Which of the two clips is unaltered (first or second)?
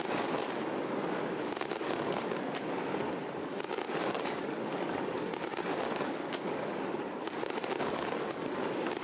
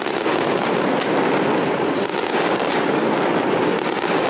second